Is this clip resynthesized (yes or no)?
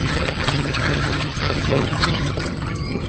yes